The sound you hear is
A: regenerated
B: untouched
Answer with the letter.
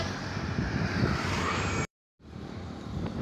A